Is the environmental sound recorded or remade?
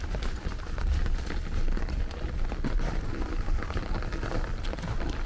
recorded